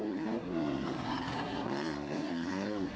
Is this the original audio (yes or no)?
no